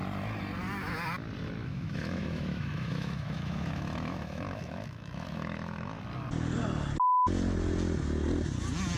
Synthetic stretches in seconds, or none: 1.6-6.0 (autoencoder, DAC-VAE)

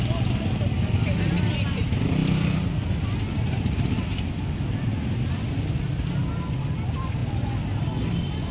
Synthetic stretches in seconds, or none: none

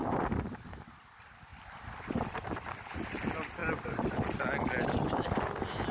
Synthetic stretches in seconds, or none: none

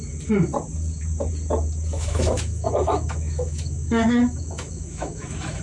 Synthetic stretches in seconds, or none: 1.9-5.6 (autoencoder, DAC-VAE)

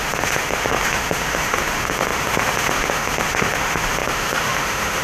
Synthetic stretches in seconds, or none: 0.0-5.0 (autoencoder, DAC-VAE)

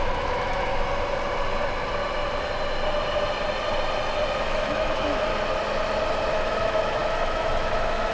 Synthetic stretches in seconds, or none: 0.0-0.7 (autoencoder, DAC-VAE); 4.4-5.3; 6.3-8.1

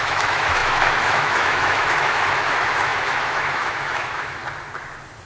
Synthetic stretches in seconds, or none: 0.0-4.4 (autoencoder, DAC-VAE)